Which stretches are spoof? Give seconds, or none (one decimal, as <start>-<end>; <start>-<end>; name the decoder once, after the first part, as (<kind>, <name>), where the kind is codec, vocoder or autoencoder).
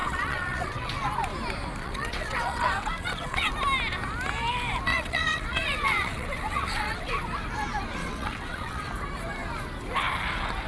0.0-1.1 (vocoder, WaveNeXt); 1.8-3.5; 4.9-7.2; 8.0-8.9